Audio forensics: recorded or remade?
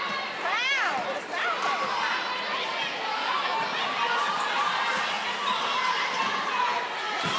recorded